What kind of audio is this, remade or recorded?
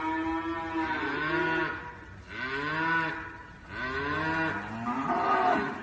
recorded